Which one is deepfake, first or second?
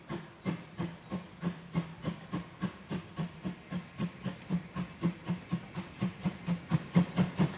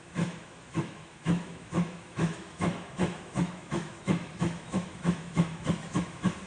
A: second